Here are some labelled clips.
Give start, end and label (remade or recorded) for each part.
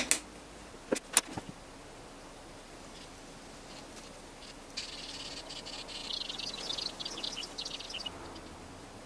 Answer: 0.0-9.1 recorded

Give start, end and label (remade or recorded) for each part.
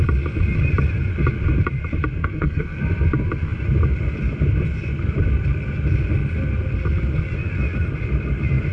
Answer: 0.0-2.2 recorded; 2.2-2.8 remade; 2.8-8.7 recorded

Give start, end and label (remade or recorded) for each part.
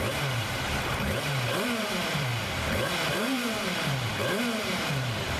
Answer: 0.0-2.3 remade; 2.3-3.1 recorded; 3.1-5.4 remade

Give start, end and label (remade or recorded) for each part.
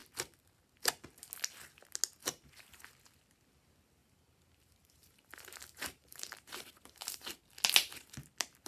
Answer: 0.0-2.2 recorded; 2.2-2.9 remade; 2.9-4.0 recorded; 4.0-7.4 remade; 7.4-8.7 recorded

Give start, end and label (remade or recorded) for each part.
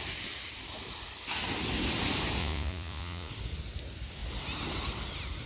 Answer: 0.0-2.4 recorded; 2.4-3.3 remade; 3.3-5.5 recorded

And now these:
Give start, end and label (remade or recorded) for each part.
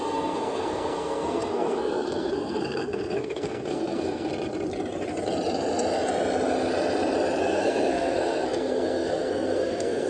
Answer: 0.0-4.3 remade; 4.3-7.4 recorded; 7.4-10.1 remade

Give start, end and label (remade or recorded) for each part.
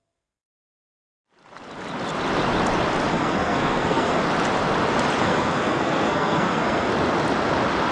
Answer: 0.0-1.1 remade; 1.1-3.1 recorded; 3.1-4.2 remade; 4.2-5.2 recorded; 5.2-6.9 remade; 6.9-7.9 recorded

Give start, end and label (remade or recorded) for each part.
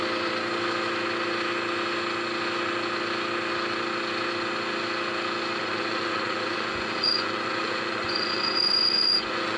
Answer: 0.0-5.6 recorded; 5.6-9.6 remade